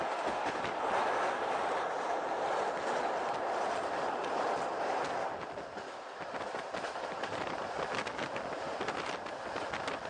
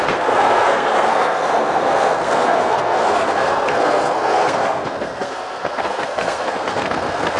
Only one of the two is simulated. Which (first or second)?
second